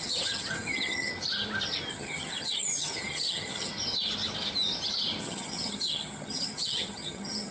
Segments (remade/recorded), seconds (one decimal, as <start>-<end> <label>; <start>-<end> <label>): 0.0-1.1 remade; 1.1-1.9 recorded; 1.9-3.7 remade; 3.7-5.2 recorded; 5.2-7.5 remade